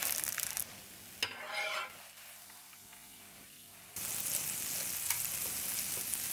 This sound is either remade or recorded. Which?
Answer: recorded